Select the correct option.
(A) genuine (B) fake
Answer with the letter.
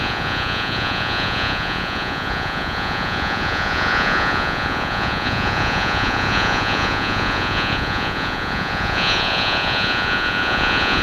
B